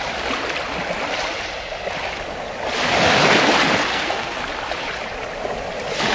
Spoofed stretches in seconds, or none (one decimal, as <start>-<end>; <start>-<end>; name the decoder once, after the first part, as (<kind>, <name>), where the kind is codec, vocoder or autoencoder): 3.9-4.4 (codec, SNAC)